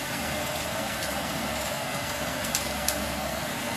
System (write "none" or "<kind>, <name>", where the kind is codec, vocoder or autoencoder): codec, SNAC